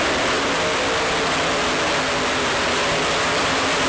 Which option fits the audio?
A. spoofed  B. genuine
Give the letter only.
B